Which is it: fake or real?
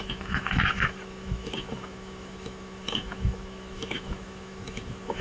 fake